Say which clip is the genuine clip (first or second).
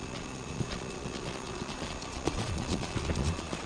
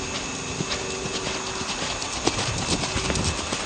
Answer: second